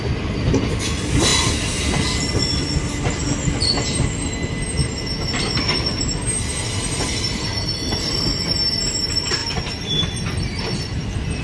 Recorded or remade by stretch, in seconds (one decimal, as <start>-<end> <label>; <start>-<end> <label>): 0.0-11.4 recorded